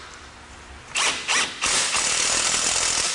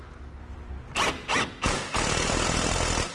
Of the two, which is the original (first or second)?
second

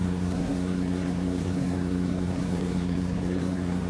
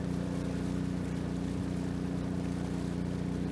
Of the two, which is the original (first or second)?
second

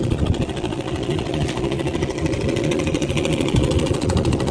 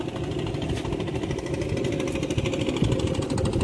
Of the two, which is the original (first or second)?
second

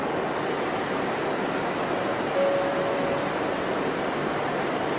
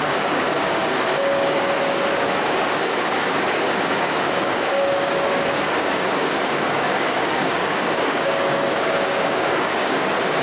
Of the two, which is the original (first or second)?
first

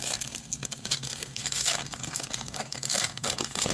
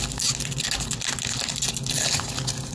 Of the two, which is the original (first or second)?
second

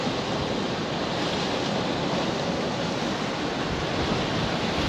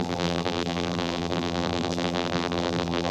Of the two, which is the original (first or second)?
first